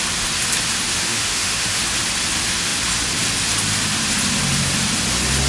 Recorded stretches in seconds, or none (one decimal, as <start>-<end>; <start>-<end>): 0.0-0.9; 1.8-5.5